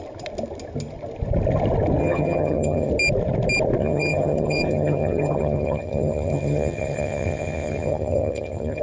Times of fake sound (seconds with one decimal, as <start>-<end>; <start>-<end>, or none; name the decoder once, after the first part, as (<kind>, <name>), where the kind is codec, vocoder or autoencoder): 2.0-2.9 (vocoder, HiFi-GAN); 3.8-8.8